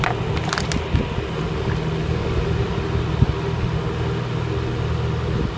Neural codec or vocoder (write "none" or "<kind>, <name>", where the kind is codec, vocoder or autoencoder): none